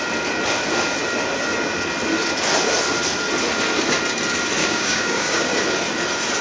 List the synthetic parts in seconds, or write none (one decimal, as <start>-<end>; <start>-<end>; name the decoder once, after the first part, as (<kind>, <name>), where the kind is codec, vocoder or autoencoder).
4.6-5.5 (codec, DAC)